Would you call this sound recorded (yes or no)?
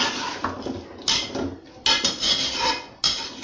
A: yes